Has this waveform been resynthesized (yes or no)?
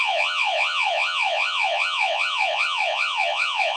yes